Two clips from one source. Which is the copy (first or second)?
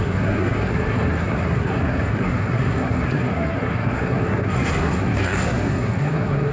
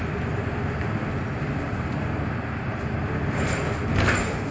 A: first